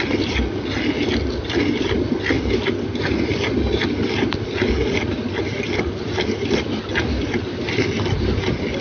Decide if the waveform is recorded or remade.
recorded